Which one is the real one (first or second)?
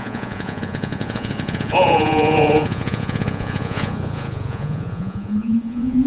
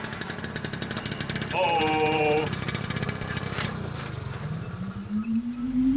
second